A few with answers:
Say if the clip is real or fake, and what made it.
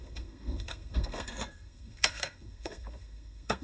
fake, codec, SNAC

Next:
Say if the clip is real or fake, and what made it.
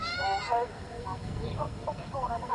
fake, codec, SNAC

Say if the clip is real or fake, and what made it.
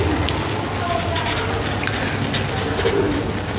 real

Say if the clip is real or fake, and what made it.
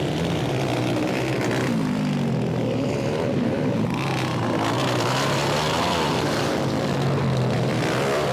real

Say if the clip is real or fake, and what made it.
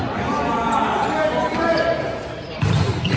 real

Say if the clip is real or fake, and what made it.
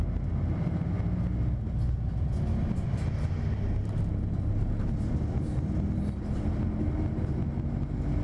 real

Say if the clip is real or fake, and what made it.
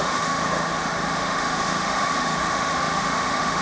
fake, autoencoder, DAC-VAE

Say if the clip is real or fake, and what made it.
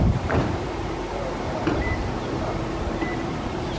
fake, vocoder, BigVGAN v2